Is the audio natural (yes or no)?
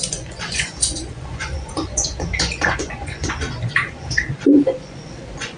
no